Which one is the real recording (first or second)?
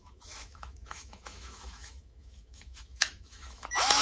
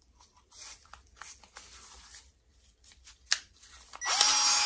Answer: second